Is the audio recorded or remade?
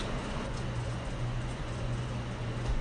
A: remade